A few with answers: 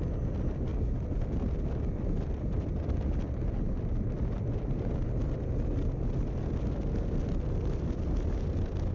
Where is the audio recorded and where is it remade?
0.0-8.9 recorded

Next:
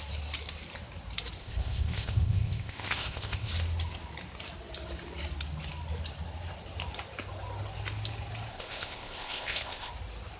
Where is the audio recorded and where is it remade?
0.0-1.4 recorded; 1.4-3.5 remade; 3.5-8.5 recorded; 8.5-9.9 remade; 9.9-10.4 recorded